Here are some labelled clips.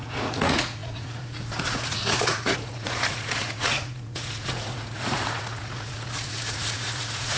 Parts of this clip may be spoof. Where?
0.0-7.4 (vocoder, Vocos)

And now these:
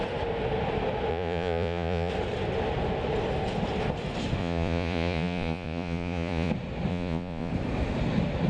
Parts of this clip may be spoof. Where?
1.1-2.1 (vocoder, Vocos); 4.4-6.5; 6.9-7.5